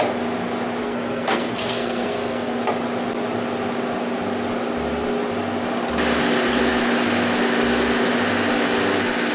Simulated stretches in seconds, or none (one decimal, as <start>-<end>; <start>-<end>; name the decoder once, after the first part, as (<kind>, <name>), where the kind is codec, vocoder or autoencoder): 0.8-2.6 (codec, SNAC)

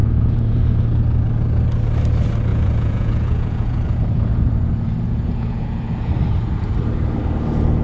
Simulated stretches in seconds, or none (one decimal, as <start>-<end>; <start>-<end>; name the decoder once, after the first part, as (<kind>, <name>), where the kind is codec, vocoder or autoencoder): 0.0-0.8 (vocoder, Vocos); 2.5-6.1